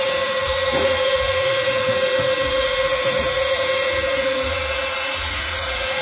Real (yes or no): no